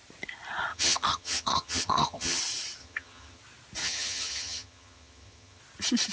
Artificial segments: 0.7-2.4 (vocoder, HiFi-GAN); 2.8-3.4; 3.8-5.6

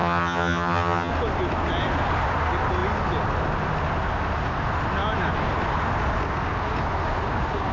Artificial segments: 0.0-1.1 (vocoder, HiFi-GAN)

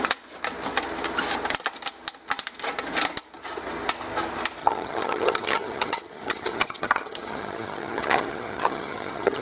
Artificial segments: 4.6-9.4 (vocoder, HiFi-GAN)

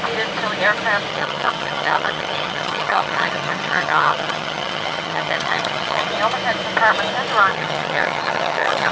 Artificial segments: 1.1-6.1 (vocoder, HiFi-GAN); 7.5-8.9

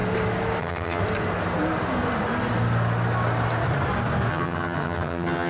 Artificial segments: 0.6-1.0 (vocoder, HiFi-GAN); 4.3-5.5

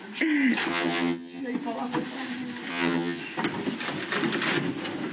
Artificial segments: 0.7-1.4 (vocoder, HiFi-GAN); 2.7-3.2

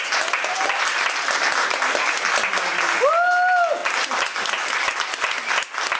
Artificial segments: none